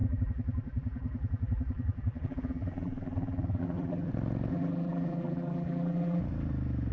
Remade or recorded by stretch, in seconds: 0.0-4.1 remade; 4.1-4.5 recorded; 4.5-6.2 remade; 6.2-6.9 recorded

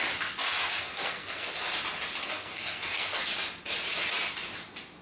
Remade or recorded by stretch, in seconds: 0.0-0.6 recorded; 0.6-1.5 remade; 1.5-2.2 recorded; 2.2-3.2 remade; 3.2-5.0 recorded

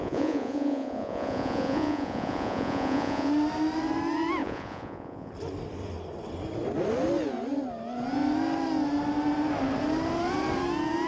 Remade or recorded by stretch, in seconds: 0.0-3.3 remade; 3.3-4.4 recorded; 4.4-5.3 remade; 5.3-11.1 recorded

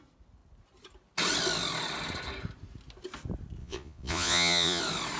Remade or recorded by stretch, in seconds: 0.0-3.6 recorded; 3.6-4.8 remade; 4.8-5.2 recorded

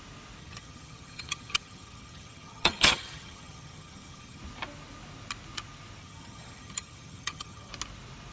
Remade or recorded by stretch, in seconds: 0.0-0.4 recorded; 0.4-4.4 remade; 4.4-6.0 recorded; 6.0-7.7 remade; 7.7-8.3 recorded